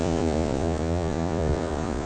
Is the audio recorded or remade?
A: remade